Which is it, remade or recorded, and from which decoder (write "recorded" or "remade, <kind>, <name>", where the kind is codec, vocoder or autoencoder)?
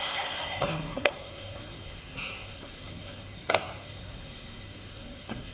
remade, codec, SNAC